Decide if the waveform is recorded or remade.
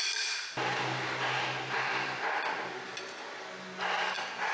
recorded